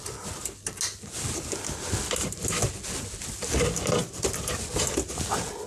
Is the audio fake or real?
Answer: real